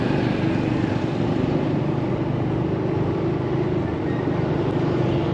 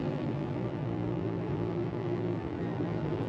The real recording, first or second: first